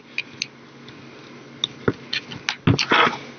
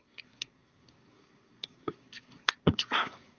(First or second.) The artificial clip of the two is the second